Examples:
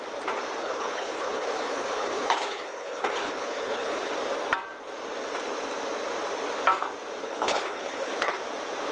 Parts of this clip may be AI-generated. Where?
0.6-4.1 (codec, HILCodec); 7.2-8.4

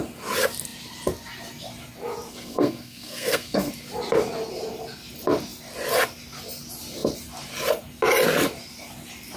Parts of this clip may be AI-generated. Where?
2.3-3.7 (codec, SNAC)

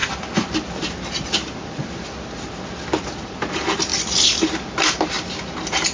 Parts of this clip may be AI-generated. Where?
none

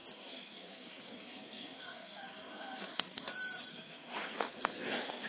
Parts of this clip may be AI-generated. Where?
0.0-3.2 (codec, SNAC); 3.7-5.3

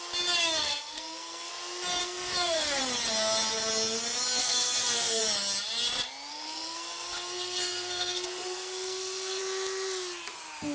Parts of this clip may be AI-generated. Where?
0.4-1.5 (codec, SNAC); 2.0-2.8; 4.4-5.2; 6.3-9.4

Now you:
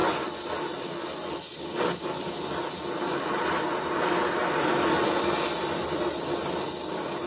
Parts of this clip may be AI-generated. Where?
none